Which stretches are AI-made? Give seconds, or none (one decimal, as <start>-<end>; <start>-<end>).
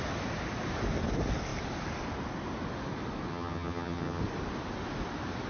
3.3-4.2